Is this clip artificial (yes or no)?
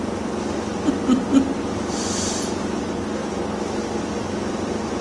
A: no